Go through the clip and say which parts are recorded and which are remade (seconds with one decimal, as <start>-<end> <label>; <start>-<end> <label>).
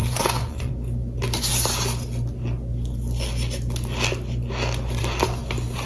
0.0-0.7 remade; 0.7-5.9 recorded